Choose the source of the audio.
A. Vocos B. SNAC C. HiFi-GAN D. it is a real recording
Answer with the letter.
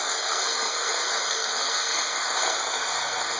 B